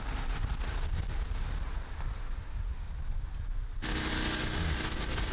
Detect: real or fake real